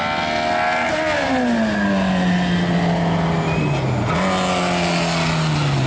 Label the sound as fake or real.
real